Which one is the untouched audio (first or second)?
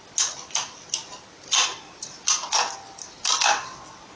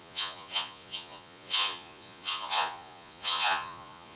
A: first